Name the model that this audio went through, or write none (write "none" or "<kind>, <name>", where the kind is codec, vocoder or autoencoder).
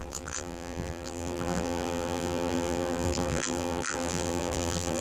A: vocoder, BigVGAN v2